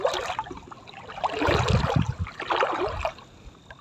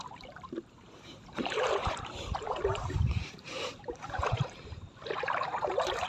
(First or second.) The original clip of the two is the first